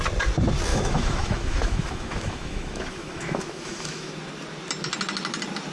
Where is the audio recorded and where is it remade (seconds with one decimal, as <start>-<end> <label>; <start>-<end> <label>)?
0.0-0.7 recorded; 0.7-4.1 remade; 4.1-5.7 recorded